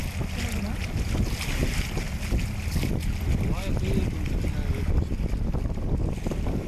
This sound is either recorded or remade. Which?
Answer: recorded